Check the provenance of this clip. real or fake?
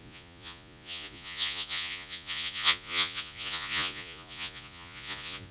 fake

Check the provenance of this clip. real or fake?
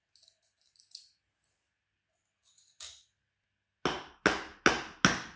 real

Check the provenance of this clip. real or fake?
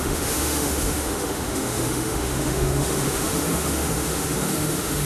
fake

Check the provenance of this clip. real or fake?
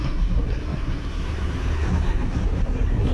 fake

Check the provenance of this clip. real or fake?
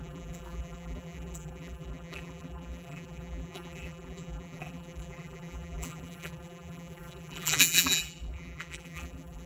fake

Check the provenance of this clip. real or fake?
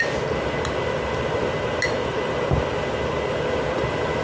real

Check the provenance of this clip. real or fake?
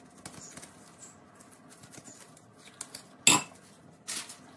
real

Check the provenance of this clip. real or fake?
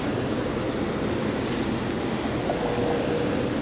real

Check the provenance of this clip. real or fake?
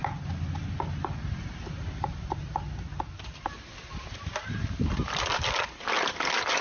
real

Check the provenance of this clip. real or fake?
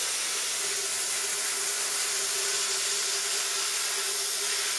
real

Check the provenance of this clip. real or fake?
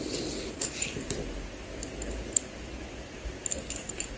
real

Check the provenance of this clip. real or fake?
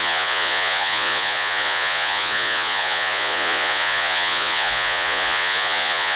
fake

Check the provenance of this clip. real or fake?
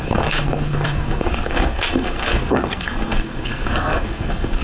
fake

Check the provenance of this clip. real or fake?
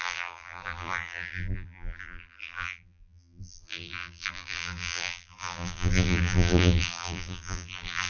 fake